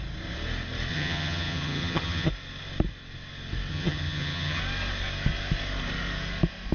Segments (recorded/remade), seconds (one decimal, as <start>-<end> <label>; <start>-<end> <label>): 0.0-0.9 recorded; 0.9-2.3 remade; 2.3-3.7 recorded; 3.7-4.6 remade; 4.6-6.7 recorded